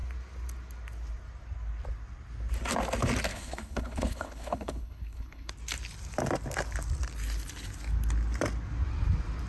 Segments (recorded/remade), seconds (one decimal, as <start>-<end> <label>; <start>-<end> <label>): 0.0-3.3 recorded; 3.3-5.5 remade; 5.5-9.5 recorded

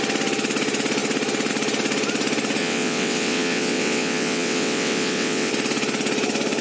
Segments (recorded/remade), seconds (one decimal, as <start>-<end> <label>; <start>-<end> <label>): 0.0-2.6 recorded; 2.6-5.5 remade; 5.5-6.6 recorded